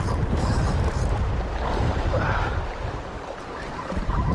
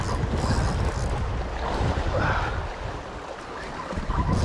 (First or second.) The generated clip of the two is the first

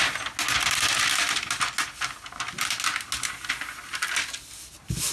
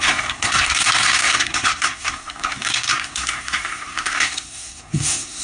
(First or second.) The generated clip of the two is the second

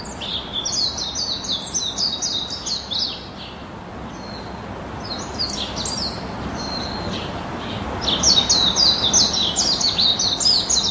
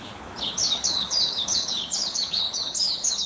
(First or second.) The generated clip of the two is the second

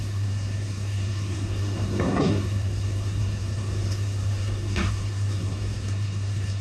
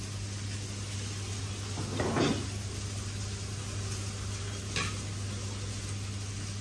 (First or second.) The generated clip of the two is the first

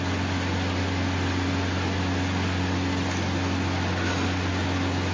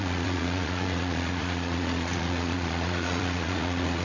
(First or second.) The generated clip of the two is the second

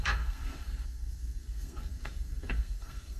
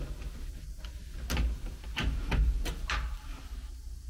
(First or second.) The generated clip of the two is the first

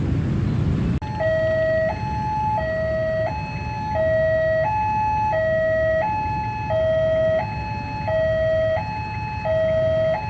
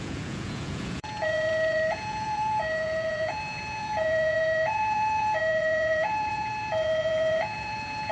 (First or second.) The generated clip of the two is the second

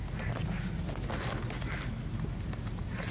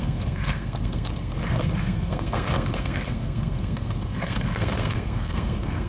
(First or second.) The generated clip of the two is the second